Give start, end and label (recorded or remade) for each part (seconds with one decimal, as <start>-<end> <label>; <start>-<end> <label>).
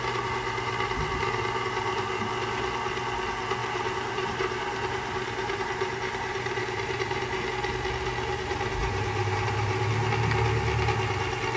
0.0-3.6 recorded; 3.6-7.5 remade; 7.5-8.8 recorded; 8.8-9.8 remade; 9.8-11.6 recorded